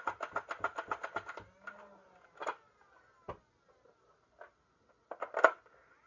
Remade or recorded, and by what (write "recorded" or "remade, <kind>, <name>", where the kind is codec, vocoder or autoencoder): recorded